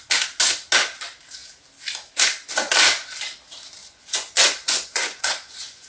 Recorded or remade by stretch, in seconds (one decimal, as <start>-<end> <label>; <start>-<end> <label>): 0.0-3.8 recorded; 3.8-5.9 remade